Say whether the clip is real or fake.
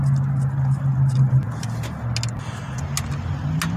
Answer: real